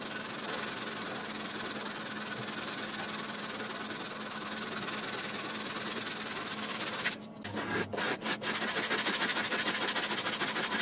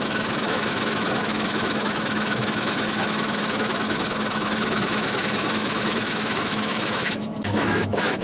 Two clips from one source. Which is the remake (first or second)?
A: second